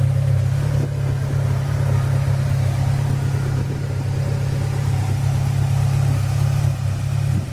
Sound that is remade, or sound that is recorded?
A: recorded